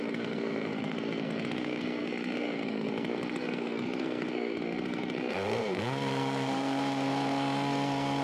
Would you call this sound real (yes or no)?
no